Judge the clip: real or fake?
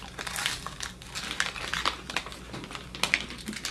real